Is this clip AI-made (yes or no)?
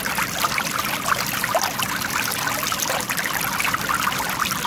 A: no